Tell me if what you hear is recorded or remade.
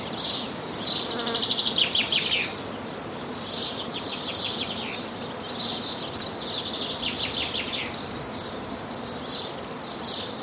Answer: recorded